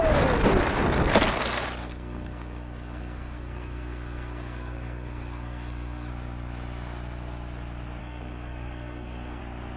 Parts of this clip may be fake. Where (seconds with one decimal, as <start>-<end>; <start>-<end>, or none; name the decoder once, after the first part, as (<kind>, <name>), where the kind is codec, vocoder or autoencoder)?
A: 1.8-6.1 (codec, SNAC); 8.0-9.4